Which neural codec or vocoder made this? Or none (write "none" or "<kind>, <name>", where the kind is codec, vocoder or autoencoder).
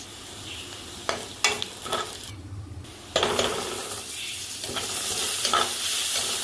none